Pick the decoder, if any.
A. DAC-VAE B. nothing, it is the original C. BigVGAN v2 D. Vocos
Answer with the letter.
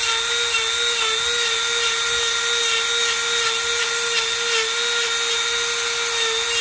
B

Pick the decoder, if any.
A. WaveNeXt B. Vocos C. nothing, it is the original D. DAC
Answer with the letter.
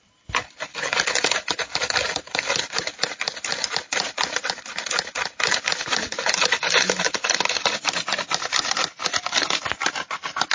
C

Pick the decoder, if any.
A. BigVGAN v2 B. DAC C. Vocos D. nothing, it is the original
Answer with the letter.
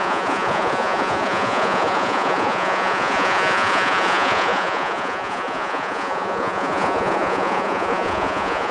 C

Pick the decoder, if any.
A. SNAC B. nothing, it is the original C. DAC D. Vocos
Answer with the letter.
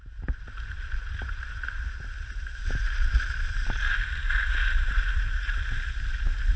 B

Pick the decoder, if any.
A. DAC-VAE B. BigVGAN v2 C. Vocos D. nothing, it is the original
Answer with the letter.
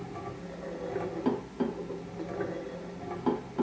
D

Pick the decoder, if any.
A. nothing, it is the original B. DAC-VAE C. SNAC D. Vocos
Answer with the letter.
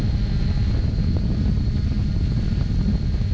A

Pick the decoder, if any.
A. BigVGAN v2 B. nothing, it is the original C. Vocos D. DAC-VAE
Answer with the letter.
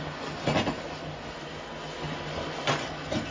B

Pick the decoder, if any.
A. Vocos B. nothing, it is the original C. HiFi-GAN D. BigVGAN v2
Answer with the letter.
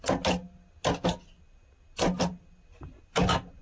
B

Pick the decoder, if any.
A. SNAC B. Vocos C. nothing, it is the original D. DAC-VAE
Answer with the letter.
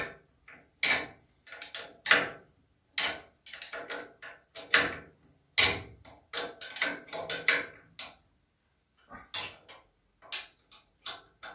C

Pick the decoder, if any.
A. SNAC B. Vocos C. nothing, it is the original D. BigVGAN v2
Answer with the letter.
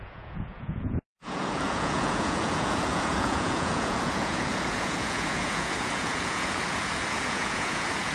B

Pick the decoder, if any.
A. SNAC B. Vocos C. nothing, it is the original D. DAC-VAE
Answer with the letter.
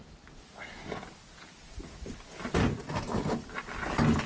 C